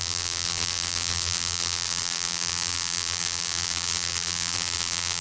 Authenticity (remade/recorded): remade